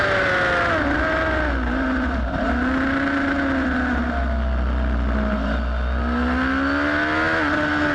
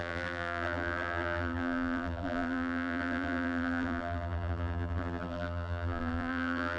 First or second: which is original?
first